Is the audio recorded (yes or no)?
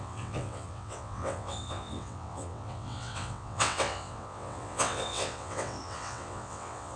no